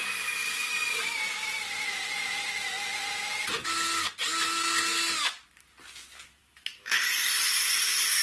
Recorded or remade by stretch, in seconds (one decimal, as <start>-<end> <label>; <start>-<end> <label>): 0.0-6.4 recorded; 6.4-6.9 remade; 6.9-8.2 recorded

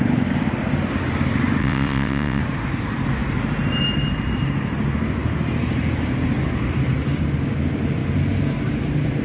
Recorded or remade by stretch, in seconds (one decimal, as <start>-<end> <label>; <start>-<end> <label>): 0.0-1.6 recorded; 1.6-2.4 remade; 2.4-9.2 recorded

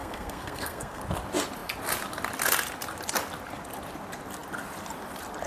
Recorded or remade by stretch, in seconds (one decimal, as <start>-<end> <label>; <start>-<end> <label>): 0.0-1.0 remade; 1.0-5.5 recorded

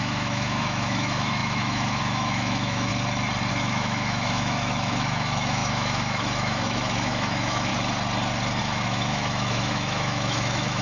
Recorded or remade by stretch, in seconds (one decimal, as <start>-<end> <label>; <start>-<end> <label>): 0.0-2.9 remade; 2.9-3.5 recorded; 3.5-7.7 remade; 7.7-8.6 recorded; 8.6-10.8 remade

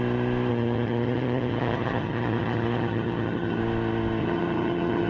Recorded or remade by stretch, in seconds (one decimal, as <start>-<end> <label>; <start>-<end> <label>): 0.0-0.5 recorded; 0.5-3.6 remade; 3.6-4.2 recorded; 4.2-5.1 remade